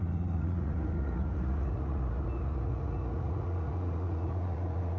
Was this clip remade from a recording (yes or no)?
yes